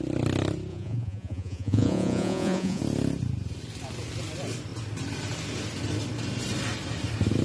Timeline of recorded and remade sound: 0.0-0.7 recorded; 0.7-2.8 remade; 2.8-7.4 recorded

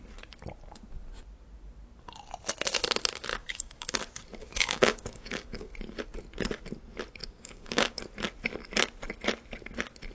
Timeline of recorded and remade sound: 0.0-3.3 recorded; 3.3-3.9 remade; 3.9-4.4 recorded; 4.4-5.7 remade; 5.7-7.2 recorded; 7.2-8.0 remade; 8.0-10.1 recorded

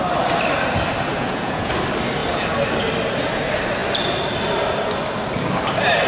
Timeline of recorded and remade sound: 0.0-1.1 recorded; 1.1-1.7 remade; 1.7-6.1 recorded